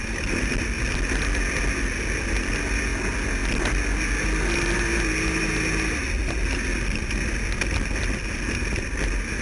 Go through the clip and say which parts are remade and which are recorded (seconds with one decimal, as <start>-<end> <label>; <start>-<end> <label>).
0.0-9.4 recorded